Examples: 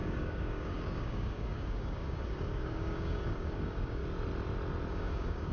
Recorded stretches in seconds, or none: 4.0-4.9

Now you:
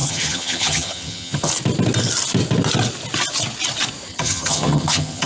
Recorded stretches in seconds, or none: 1.5-4.1

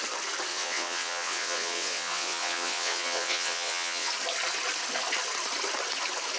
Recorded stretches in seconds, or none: 0.0-0.5; 4.1-6.4

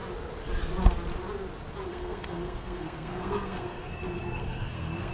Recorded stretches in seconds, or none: 0.0-1.9

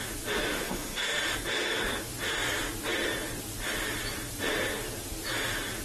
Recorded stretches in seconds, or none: 0.0-0.5; 1.2-5.8

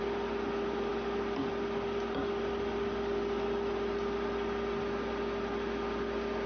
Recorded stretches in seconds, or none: 0.0-6.5